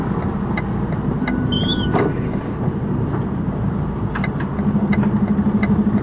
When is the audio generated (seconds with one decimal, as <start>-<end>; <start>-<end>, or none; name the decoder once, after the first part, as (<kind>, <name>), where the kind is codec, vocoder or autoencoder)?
none